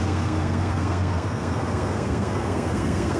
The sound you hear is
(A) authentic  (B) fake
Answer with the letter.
B